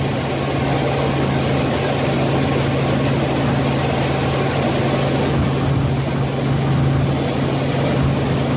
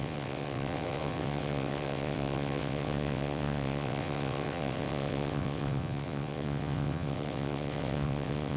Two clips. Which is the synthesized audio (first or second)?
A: second